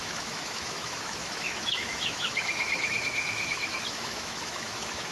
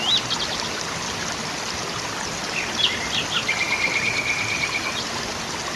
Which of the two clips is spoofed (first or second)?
first